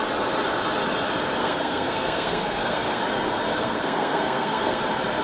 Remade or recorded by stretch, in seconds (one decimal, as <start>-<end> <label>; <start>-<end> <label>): 0.0-1.4 recorded; 1.4-3.0 remade; 3.0-3.5 recorded; 3.5-4.8 remade; 4.8-5.2 recorded